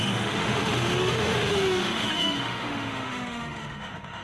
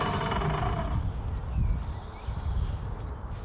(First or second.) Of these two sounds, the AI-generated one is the first